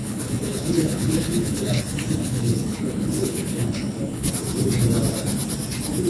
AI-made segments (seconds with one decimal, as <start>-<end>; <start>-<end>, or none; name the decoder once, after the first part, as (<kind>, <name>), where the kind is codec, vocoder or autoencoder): 0.0-1.8 (codec, HILCodec); 2.2-4.3